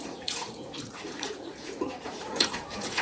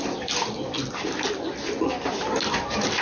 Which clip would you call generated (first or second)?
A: first